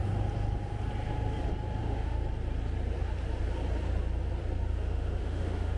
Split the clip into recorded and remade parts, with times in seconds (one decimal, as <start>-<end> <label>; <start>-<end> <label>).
0.0-1.8 recorded; 1.8-2.2 remade; 2.2-4.7 recorded; 4.7-5.8 remade